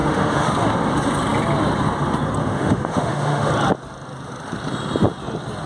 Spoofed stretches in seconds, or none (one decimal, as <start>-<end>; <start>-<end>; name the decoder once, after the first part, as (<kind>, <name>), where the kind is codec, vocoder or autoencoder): 0.0-0.5 (autoencoder, DAC-VAE); 2.4-3.5